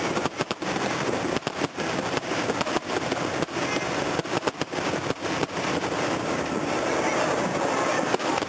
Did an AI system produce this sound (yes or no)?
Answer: no